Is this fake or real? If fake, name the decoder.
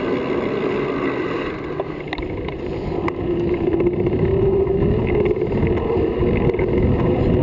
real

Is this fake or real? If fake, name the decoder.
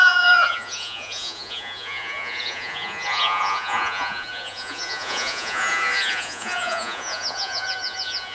fake, vocoder, Vocos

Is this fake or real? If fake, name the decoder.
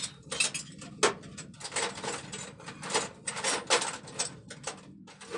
real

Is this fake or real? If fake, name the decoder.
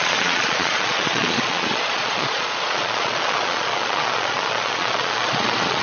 fake, vocoder, Vocos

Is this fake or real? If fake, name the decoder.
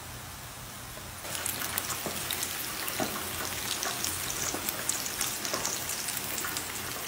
real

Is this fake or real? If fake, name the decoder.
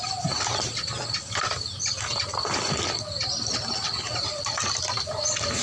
real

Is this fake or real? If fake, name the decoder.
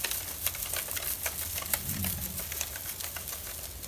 real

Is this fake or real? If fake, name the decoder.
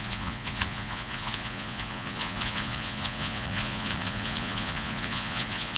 fake, vocoder, Vocos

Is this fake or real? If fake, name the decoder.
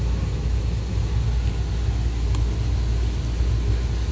real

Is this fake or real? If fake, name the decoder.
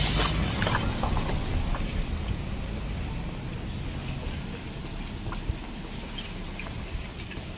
real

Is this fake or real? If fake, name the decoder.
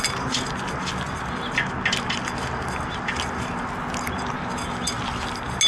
real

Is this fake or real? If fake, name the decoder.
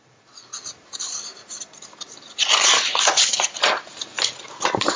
real